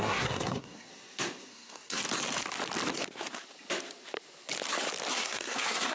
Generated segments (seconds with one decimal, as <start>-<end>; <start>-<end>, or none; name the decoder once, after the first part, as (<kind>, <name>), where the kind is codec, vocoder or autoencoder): 0.0-0.9 (codec, SNAC); 1.5-2.0; 5.1-5.9

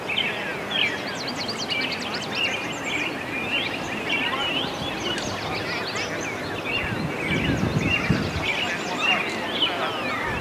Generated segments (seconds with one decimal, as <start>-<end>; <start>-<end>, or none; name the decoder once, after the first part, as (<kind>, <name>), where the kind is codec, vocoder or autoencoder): none

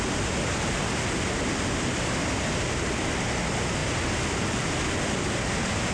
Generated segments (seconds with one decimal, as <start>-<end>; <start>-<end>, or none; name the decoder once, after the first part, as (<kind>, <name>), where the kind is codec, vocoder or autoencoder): none

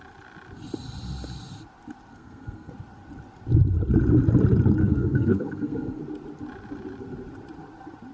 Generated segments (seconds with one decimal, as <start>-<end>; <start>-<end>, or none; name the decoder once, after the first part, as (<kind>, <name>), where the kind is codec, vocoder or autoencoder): 2.1-2.7 (codec, SNAC); 4.8-6.0

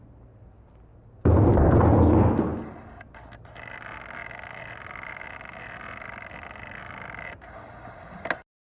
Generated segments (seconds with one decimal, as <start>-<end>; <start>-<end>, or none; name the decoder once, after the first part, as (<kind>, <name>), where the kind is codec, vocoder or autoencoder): none

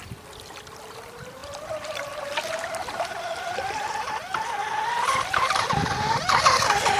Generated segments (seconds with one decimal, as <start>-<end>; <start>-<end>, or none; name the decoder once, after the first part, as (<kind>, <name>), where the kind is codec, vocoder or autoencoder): 1.4-4.1 (vocoder, BigVGAN v2); 4.9-5.9

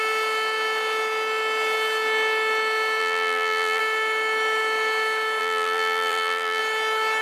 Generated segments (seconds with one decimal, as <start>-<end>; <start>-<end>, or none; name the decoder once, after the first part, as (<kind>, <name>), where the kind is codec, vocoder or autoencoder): 3.0-3.8 (vocoder, BigVGAN v2); 5.4-6.6